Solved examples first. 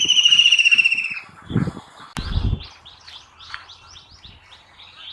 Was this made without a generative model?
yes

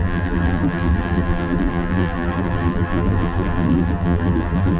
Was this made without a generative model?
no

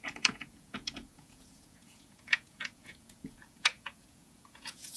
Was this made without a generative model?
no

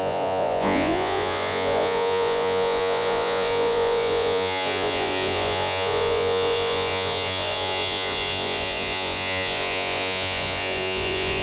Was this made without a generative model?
no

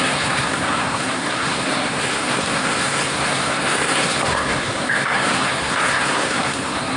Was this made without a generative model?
no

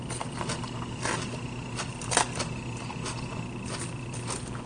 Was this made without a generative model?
yes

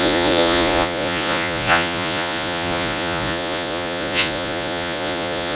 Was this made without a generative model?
no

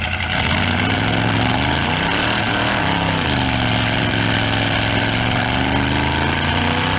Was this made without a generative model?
no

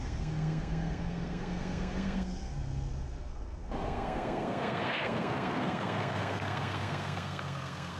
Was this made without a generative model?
no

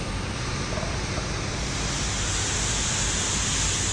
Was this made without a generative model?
yes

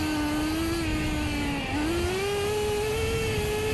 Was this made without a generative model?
yes